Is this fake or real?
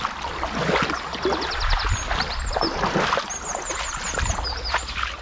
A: real